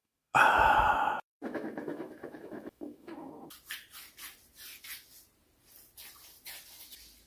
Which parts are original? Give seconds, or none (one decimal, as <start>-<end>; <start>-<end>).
3.3-7.3